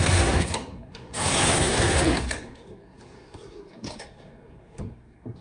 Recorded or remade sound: remade